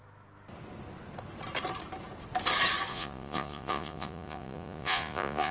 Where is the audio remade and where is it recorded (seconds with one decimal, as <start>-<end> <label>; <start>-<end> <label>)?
0.0-2.9 recorded; 2.9-5.5 remade